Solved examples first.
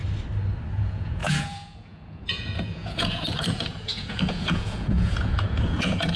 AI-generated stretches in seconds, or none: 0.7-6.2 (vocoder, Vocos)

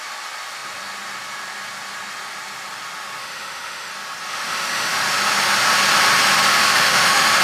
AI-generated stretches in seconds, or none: 3.2-3.9 (autoencoder, DAC-VAE); 4.3-5.0; 6.5-7.4

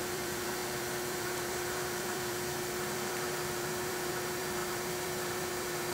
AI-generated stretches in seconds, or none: 0.0-5.9 (vocoder, BigVGAN v2)

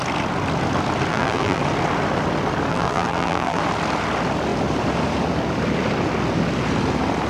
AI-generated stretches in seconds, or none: 1.1-1.6 (vocoder, BigVGAN v2); 2.7-3.6

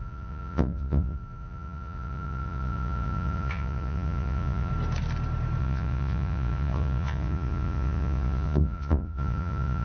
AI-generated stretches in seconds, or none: 0.0-4.7 (vocoder, Vocos); 5.6-9.8